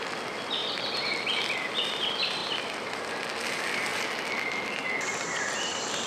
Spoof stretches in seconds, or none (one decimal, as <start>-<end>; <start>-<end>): 0.6-2.0; 2.4-3.3